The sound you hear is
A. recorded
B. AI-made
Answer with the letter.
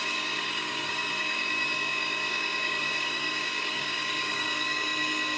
B